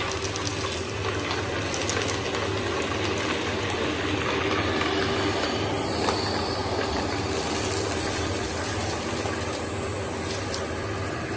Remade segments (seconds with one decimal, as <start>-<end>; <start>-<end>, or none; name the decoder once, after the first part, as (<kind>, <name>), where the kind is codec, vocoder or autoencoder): none